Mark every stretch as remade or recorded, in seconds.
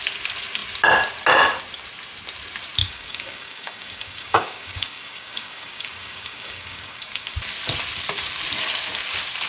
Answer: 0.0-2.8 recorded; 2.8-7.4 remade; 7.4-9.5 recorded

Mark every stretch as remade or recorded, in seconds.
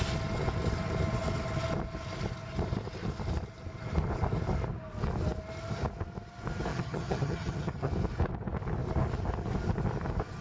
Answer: 0.0-6.7 recorded; 6.7-7.9 remade; 7.9-10.4 recorded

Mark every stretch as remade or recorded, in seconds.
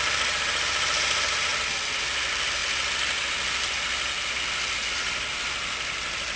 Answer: 0.0-6.4 recorded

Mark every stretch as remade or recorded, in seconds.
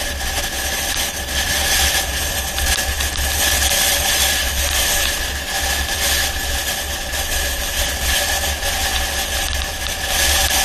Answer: 0.0-10.6 recorded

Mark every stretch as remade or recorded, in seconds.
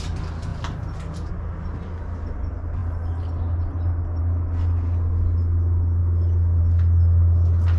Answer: 0.0-7.8 recorded